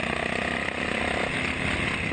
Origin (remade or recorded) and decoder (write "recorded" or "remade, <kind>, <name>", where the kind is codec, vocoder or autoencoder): recorded